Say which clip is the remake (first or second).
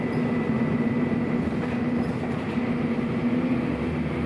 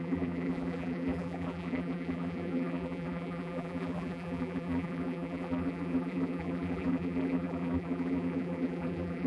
second